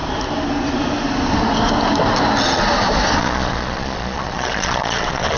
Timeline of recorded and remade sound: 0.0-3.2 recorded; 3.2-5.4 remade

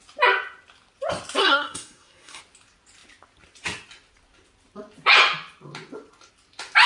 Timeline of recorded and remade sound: 0.0-1.4 recorded; 1.4-2.4 remade; 2.4-6.9 recorded

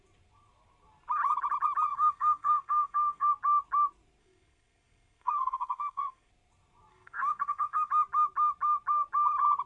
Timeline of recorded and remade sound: 0.0-1.9 recorded; 1.9-3.3 remade; 3.3-4.2 recorded; 4.2-6.3 remade; 6.3-6.9 recorded; 6.9-7.9 remade; 7.9-9.7 recorded

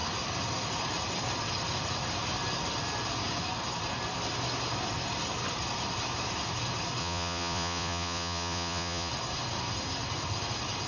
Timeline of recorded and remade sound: 0.0-7.0 recorded; 7.0-9.1 remade; 9.1-10.9 recorded

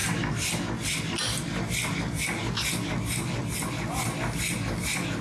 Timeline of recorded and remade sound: 0.0-5.2 recorded

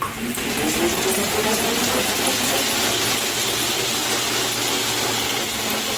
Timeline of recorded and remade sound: 0.0-6.0 recorded

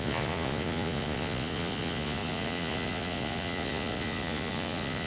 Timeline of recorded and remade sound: 0.0-5.1 remade

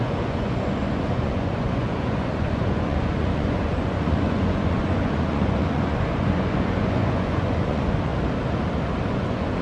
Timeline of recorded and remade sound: 0.0-8.1 remade; 8.1-9.1 recorded; 9.1-9.6 remade